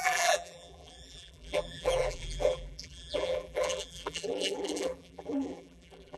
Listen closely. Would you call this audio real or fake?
fake